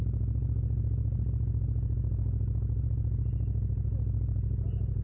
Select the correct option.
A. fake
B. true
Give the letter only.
B